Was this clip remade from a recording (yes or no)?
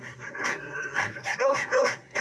yes